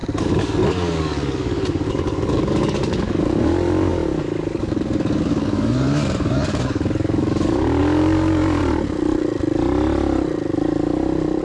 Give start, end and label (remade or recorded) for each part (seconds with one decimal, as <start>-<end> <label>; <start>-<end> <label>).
0.0-8.6 remade; 8.6-11.4 recorded